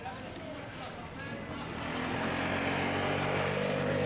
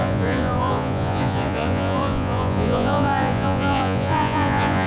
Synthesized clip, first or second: second